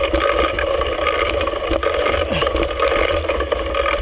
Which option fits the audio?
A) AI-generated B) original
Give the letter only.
B